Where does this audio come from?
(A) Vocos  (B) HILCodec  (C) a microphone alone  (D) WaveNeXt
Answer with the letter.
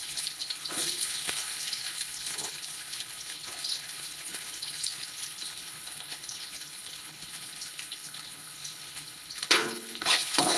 B